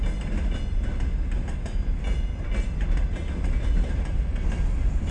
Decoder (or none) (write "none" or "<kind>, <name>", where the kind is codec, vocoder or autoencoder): none